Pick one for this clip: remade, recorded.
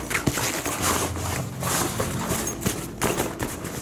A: recorded